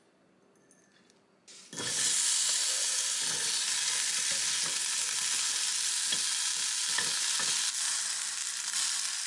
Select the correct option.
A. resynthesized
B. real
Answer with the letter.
B